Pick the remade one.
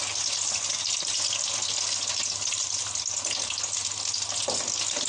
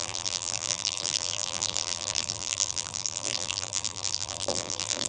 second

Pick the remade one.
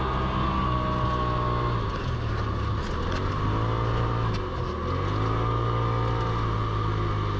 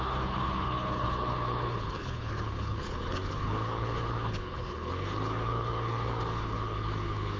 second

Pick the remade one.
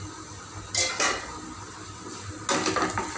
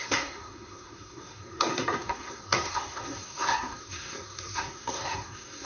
second